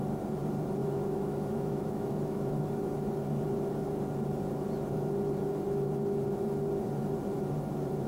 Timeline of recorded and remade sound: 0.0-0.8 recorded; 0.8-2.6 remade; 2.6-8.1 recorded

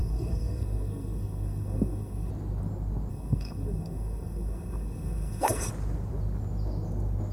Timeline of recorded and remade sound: 0.0-2.3 remade; 2.3-3.1 recorded; 3.1-5.7 remade; 5.7-7.3 recorded

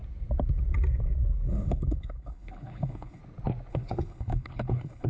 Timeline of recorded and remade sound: 0.0-1.5 recorded; 1.5-3.2 remade; 3.2-3.7 recorded; 3.7-5.1 remade

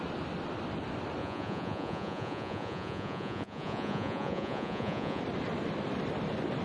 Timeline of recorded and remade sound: 0.0-1.2 recorded; 1.2-5.2 remade; 5.2-6.6 recorded

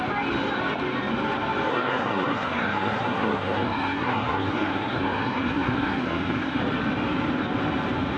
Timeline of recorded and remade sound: 0.0-1.7 recorded; 1.7-6.6 remade; 6.6-8.2 recorded